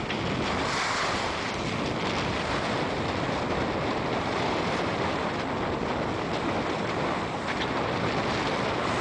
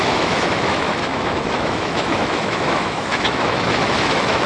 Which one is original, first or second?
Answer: first